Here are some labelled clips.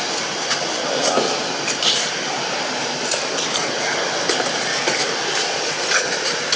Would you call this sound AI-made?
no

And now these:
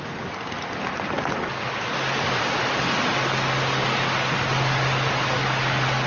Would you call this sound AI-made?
no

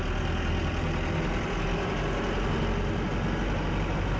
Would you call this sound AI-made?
no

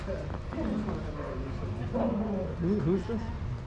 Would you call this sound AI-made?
no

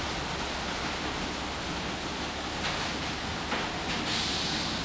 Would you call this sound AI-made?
no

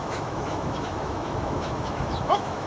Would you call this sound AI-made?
yes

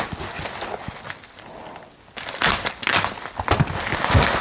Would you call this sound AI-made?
no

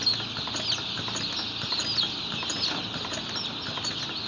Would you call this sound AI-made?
no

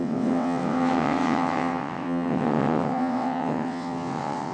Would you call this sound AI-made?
yes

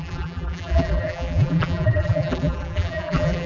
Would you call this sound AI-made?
yes